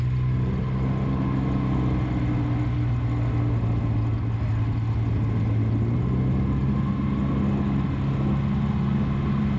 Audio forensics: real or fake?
real